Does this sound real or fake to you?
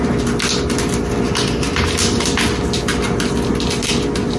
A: real